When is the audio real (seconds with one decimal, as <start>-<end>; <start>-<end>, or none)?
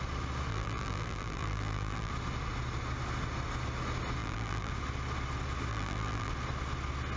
0.0-0.5; 2.1-4.2; 4.7-5.7; 6.3-7.2